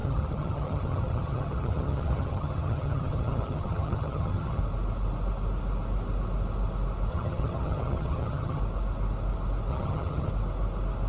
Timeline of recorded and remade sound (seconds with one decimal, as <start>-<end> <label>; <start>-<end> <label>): 0.0-4.6 remade; 4.6-7.1 recorded; 7.1-8.6 remade; 8.6-9.7 recorded; 9.7-10.3 remade; 10.3-11.1 recorded